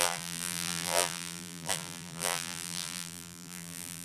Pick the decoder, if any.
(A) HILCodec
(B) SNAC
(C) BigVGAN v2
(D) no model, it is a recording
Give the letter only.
C